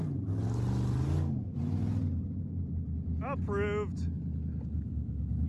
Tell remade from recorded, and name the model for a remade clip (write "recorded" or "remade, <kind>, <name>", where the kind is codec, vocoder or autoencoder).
recorded